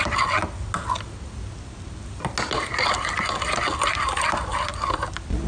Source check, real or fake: real